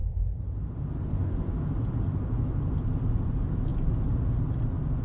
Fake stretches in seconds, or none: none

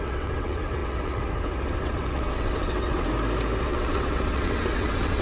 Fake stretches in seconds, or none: 0.0-3.1 (vocoder, WaveNeXt); 3.6-5.2

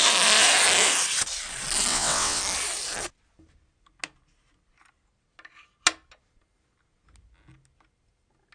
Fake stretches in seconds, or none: 1.9-2.4 (vocoder, WaveNeXt)

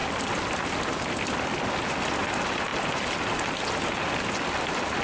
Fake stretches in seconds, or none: none

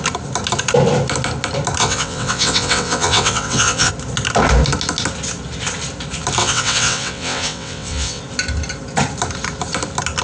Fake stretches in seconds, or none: 1.8-3.9 (vocoder, WaveNeXt); 6.4-8.2

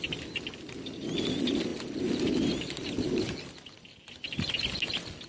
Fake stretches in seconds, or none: none